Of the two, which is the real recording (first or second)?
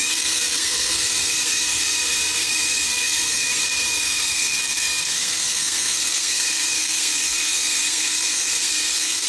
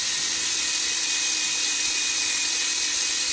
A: second